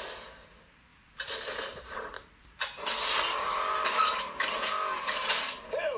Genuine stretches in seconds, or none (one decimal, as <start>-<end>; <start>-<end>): 0.0-0.9; 4.5-6.0